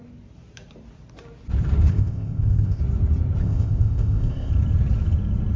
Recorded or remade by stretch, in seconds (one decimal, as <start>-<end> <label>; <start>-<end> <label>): 0.0-1.9 recorded; 1.9-2.8 remade; 2.8-3.4 recorded; 3.4-4.5 remade; 4.5-5.6 recorded